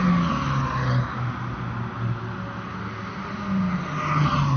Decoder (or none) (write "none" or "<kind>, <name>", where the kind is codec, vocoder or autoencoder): none